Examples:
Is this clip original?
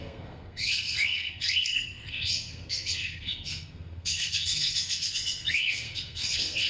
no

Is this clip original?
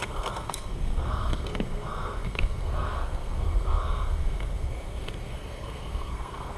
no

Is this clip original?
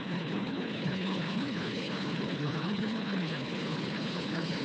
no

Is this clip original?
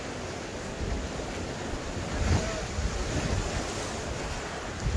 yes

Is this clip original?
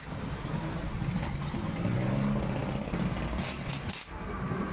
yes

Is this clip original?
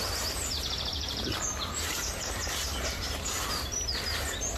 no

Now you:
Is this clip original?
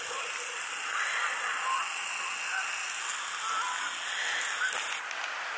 yes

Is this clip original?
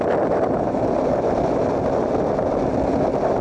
yes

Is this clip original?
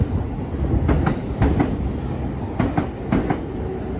yes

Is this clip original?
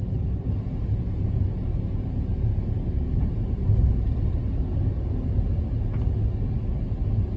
yes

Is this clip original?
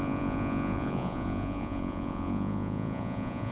no